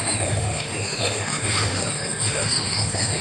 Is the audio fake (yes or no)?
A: yes